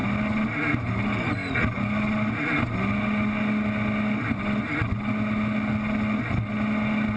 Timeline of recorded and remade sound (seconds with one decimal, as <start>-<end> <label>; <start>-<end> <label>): 0.0-7.2 recorded